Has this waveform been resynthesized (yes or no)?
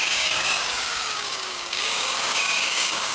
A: yes